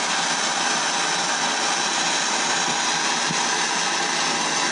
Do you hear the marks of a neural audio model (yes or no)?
no